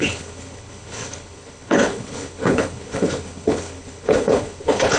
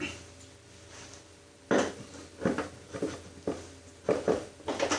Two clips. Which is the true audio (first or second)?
second